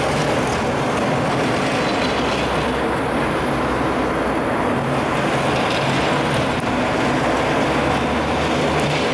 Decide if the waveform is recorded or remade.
recorded